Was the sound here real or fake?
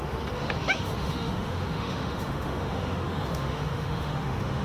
fake